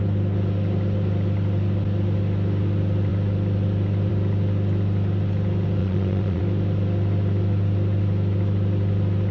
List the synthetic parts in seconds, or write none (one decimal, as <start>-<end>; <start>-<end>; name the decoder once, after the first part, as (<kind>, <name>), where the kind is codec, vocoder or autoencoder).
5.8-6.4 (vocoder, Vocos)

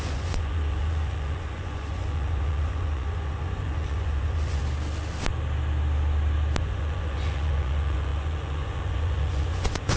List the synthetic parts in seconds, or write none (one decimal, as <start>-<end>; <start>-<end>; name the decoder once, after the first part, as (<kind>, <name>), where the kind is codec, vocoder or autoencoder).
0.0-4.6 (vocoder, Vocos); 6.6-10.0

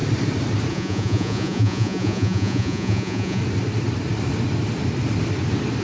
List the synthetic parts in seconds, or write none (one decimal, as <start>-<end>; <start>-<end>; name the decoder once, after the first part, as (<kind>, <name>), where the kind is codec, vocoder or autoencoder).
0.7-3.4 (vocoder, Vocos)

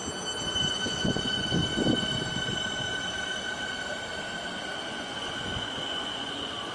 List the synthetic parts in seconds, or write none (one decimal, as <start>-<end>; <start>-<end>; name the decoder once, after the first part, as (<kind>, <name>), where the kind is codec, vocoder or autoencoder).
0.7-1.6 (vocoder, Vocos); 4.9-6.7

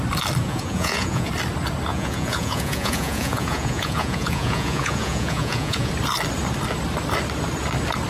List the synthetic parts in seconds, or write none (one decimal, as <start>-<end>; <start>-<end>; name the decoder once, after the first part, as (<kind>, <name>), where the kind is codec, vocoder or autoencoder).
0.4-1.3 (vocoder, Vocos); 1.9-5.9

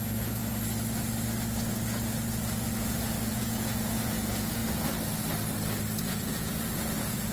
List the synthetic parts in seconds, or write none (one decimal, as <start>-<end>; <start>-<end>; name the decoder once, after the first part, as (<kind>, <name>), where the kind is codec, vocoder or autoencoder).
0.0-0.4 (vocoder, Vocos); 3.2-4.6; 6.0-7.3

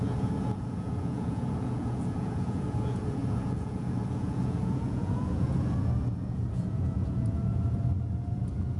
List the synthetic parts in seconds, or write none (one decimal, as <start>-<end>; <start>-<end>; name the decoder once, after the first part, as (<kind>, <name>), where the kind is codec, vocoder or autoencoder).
0.0-8.8 (vocoder, Vocos)

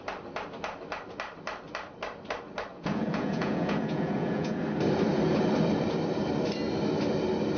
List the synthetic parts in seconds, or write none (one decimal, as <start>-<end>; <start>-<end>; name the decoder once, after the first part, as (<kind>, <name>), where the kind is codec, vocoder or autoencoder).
2.7-4.6 (vocoder, Vocos)